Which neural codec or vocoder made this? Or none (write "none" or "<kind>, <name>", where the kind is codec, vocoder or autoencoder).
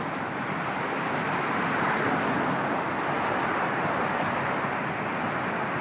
none